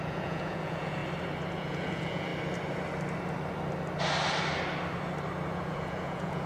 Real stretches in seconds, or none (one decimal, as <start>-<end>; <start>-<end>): 1.0-1.5; 2.3-5.5